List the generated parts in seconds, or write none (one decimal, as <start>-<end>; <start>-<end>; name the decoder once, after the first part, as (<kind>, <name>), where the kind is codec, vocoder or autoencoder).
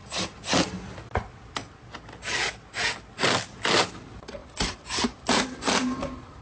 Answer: 3.8-6.4 (vocoder, BigVGAN v2)